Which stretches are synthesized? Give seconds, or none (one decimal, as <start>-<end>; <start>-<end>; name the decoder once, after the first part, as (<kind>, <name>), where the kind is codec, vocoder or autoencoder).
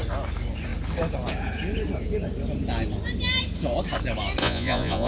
4.4-5.1 (vocoder, Vocos)